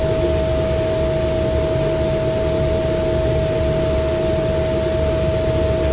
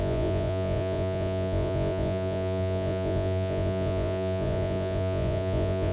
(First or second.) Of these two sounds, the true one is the first